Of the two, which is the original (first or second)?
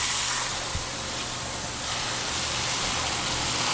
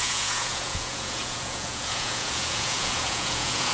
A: first